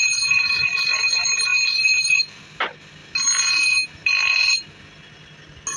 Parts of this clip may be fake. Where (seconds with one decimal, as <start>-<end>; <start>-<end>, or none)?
1.5-2.4